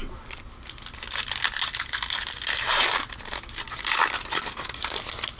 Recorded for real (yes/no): yes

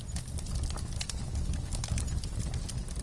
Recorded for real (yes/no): yes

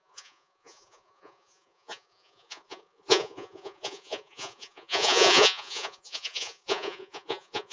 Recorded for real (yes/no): no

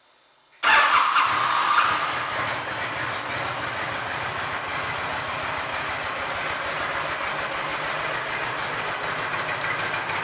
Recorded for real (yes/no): yes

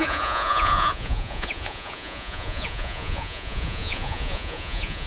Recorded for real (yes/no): no